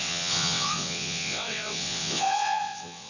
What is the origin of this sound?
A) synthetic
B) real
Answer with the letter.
A